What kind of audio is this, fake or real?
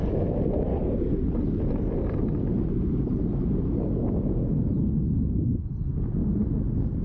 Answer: real